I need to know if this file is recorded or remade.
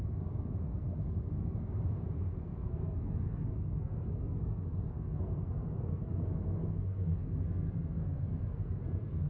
remade